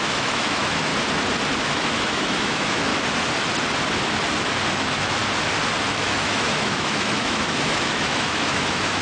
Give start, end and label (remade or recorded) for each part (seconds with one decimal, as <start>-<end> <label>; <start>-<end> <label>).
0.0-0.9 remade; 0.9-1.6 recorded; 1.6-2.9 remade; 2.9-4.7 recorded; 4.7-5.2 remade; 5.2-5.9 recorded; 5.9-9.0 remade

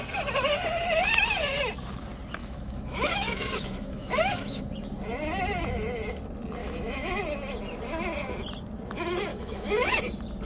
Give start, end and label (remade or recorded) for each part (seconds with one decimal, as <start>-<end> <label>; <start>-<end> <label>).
0.0-2.4 recorded; 2.4-4.6 remade; 4.6-6.6 recorded; 6.6-7.2 remade; 7.2-9.3 recorded; 9.3-10.0 remade; 10.0-10.5 recorded

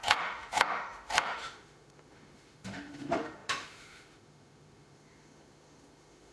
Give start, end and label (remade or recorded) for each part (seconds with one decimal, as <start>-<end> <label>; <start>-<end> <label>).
0.0-6.3 remade

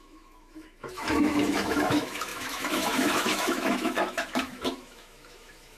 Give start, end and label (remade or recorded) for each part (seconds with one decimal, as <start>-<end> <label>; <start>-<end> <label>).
0.0-5.8 remade

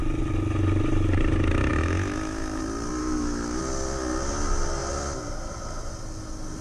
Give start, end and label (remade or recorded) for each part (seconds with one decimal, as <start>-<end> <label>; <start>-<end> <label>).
0.0-1.7 recorded; 1.7-2.6 remade; 2.6-3.0 recorded; 3.0-3.6 remade; 3.6-6.6 recorded

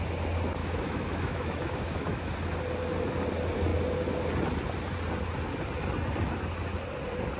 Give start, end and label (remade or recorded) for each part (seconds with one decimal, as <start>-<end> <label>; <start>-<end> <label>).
0.0-0.6 recorded; 0.6-2.3 remade; 2.3-7.4 recorded